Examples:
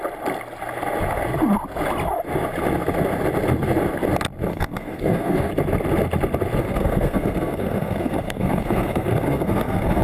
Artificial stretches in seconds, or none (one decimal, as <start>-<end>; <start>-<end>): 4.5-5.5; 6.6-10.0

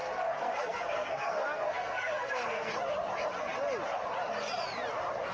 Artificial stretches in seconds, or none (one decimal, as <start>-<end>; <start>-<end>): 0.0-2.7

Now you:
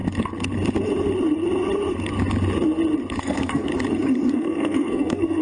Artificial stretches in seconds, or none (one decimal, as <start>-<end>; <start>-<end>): 3.2-3.7; 4.3-5.4